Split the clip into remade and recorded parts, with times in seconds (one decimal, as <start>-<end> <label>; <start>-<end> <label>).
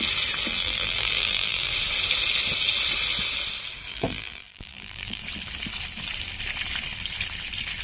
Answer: 0.0-0.5 recorded; 0.5-1.7 remade; 1.7-3.9 recorded; 3.9-5.2 remade; 5.2-7.8 recorded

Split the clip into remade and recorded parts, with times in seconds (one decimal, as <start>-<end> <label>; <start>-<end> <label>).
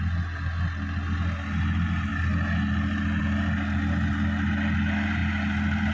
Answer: 0.0-5.9 recorded